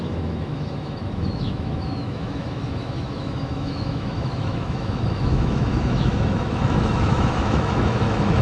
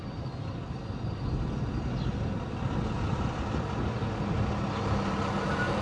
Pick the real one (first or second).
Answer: second